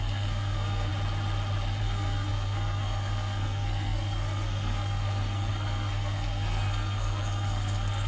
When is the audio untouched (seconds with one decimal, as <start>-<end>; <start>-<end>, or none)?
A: 0.9-1.8